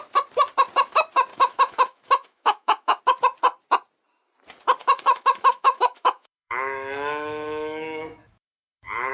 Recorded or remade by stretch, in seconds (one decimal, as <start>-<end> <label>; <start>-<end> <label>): 0.0-1.3 recorded; 1.3-3.0 remade; 3.0-4.8 recorded; 4.8-9.1 remade